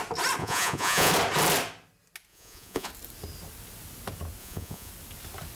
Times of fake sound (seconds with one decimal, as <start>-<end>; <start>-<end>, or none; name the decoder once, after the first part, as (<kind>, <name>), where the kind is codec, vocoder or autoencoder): 0.4-1.1 (vocoder, Vocos); 2.3-2.9; 4.4-4.9